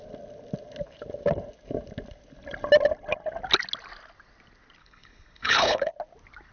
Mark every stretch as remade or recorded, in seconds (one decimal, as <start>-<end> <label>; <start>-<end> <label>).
0.0-4.8 recorded; 4.8-5.9 remade; 5.9-6.5 recorded